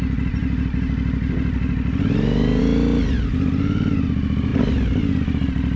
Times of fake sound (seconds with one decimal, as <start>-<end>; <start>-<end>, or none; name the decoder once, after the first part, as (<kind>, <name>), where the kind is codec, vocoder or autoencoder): none